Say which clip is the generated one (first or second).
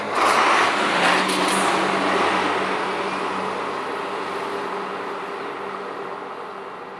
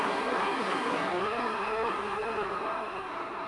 second